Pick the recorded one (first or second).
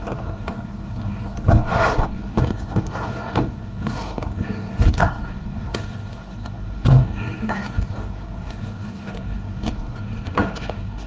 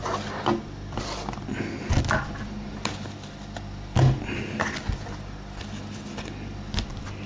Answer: second